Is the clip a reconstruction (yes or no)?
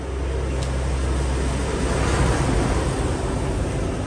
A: no